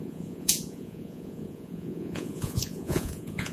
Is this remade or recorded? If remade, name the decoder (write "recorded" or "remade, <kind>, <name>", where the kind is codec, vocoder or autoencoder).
remade, vocoder, Vocos